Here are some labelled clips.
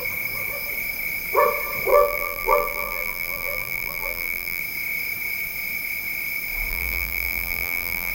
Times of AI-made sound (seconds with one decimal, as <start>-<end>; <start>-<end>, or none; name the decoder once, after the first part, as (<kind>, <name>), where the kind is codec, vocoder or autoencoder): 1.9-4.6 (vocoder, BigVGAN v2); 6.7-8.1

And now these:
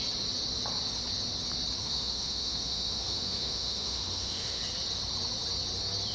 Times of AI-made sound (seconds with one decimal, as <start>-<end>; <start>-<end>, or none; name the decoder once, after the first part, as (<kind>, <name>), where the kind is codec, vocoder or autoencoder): 1.8-4.6 (autoencoder, DAC-VAE)

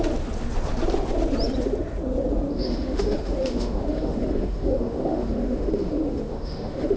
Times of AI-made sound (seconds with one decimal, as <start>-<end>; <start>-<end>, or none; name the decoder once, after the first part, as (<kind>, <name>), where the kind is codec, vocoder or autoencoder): 2.5-7.0 (autoencoder, DAC-VAE)

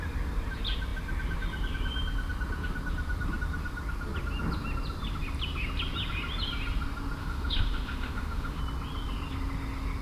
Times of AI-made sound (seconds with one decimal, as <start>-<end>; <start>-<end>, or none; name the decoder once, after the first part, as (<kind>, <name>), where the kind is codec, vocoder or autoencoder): 7.2-8.6 (autoencoder, DAC-VAE)

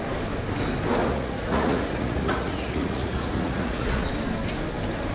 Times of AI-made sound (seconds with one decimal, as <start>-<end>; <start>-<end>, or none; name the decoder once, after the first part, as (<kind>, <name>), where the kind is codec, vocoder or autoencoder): 1.0-4.1 (vocoder, Vocos)

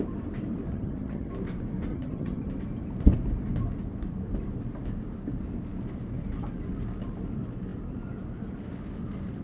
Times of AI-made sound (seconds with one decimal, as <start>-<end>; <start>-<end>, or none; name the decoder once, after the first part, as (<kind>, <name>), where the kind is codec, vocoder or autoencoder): 0.7-1.3 (vocoder, HiFi-GAN); 1.9-2.5

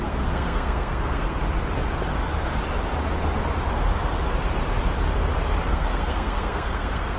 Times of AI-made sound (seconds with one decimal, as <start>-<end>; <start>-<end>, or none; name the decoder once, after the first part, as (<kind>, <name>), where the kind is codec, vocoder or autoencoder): 0.0-1.4 (codec, SNAC); 5.7-7.2